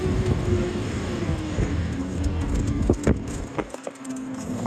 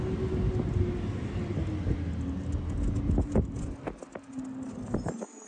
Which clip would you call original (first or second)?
second